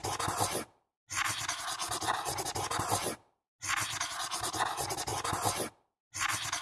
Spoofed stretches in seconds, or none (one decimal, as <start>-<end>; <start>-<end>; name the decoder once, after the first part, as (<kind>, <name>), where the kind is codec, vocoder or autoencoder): none